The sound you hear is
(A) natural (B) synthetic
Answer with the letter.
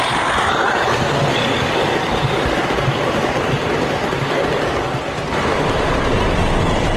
A